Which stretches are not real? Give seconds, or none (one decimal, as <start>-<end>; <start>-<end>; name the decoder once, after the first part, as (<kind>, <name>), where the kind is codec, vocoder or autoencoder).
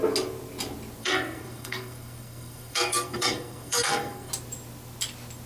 1.0-4.3 (codec, SNAC)